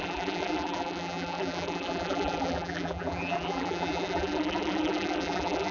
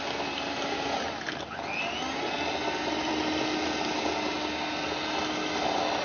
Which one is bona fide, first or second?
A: second